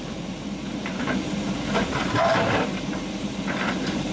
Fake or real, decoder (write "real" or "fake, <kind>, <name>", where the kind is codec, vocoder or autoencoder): fake, vocoder, BigVGAN v2